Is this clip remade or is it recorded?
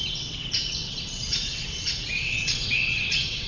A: remade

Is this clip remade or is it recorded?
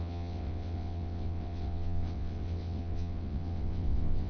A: remade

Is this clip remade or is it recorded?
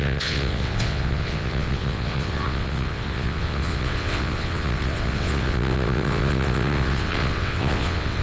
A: remade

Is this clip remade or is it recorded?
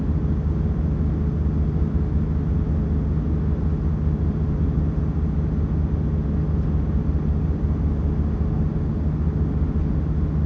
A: recorded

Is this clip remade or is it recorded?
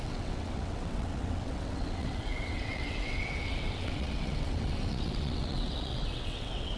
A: remade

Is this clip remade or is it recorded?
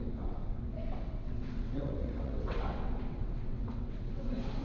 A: remade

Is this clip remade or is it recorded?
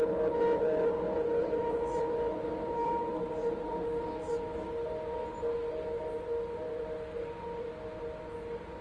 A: recorded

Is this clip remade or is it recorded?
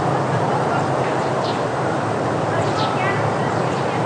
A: recorded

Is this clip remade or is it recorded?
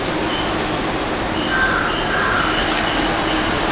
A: recorded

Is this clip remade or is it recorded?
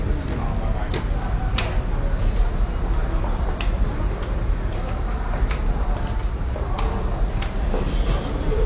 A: recorded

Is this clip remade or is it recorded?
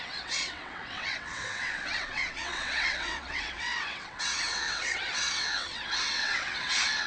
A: remade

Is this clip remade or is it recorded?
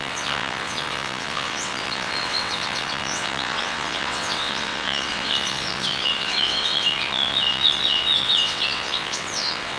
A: remade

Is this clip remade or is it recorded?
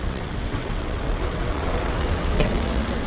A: remade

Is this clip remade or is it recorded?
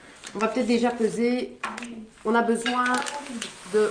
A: recorded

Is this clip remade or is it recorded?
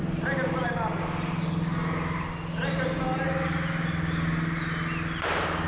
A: recorded